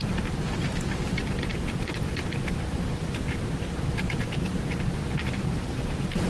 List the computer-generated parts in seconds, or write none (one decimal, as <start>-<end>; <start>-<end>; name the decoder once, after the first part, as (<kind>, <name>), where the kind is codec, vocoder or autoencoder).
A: 0.0-2.9 (vocoder, BigVGAN v2); 3.8-6.3